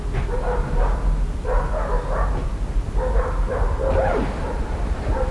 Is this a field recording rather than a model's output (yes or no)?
yes